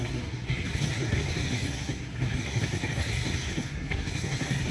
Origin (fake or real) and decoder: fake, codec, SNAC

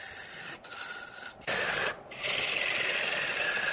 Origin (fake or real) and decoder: real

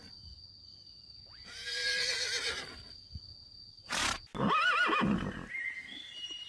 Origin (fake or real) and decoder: real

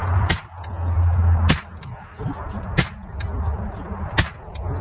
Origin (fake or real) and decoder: real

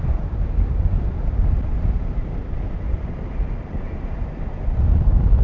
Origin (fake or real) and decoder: fake, vocoder, BigVGAN v2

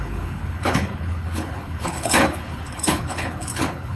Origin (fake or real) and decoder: fake, codec, HILCodec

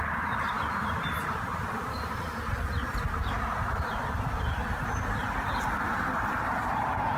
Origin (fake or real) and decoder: fake, vocoder, BigVGAN v2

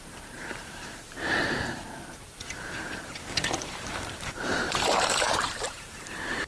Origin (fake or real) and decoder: fake, vocoder, BigVGAN v2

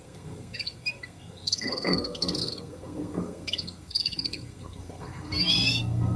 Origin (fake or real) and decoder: fake, codec, SNAC